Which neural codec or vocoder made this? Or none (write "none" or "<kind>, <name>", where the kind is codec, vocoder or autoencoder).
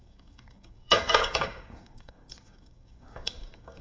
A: codec, DAC